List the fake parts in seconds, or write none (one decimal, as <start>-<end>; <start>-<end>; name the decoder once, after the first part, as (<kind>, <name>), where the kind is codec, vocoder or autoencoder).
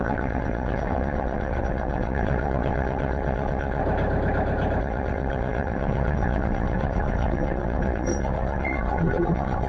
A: 0.0-3.8 (vocoder, WaveNeXt); 4.8-9.7